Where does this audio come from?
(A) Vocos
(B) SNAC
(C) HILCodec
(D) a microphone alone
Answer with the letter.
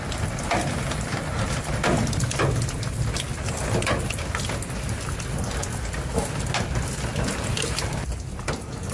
D